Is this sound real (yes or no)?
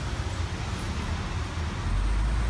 yes